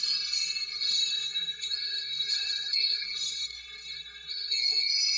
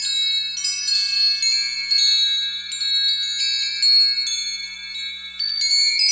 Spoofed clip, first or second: first